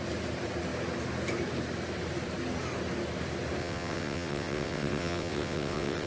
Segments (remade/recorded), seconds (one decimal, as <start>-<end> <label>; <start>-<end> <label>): 0.0-3.6 recorded; 3.6-6.1 remade